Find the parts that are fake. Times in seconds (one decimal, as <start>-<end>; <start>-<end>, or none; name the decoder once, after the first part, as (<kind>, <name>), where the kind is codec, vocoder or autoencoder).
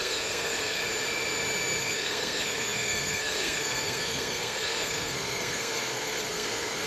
0.0-0.8 (codec, SNAC); 1.8-6.9